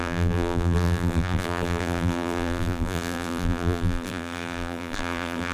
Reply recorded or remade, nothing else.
remade